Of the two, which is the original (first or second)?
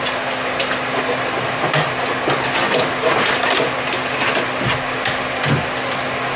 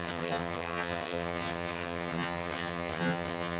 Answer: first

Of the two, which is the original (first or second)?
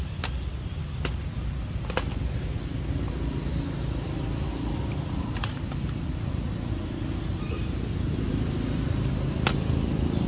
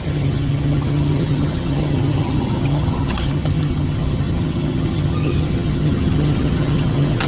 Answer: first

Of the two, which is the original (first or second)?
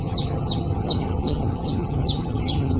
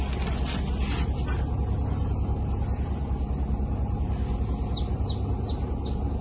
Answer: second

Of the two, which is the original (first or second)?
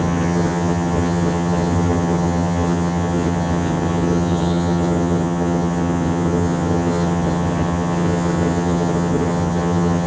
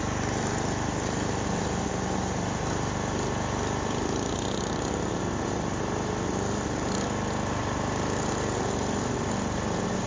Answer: second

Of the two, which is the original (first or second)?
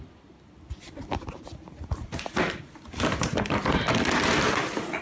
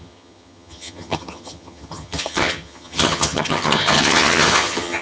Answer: first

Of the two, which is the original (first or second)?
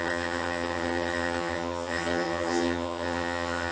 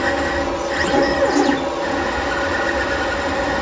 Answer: second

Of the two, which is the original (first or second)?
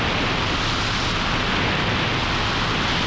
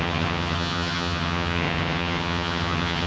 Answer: first